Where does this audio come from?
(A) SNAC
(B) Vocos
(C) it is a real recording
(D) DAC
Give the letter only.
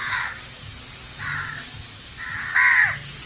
C